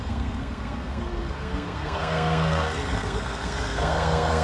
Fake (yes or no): yes